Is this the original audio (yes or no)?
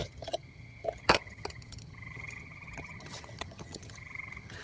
no